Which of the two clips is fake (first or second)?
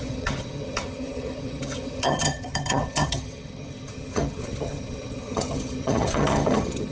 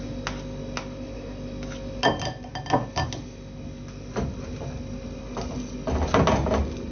first